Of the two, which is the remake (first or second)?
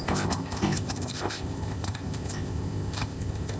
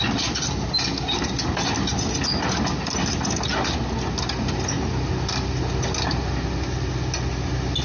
first